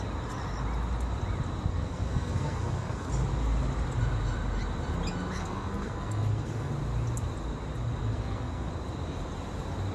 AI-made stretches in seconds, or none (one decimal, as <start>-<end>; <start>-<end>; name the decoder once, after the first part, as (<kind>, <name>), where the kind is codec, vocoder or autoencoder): 1.7-3.1 (codec, SNAC); 5.4-6.7; 8.0-8.7